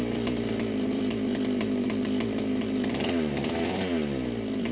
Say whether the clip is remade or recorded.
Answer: remade